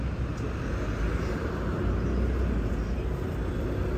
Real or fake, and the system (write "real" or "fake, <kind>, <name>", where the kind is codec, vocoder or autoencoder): real